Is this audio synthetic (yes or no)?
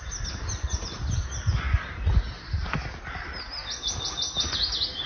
no